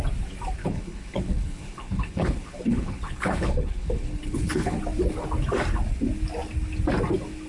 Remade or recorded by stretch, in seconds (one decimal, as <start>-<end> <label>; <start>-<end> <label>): 0.0-0.6 recorded; 0.6-4.8 remade; 4.8-7.5 recorded